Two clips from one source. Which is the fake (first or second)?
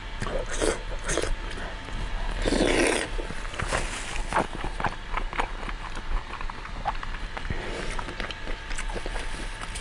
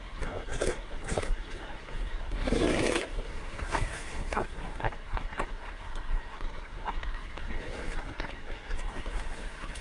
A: second